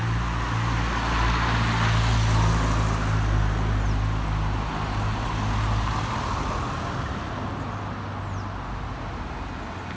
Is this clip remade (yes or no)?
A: no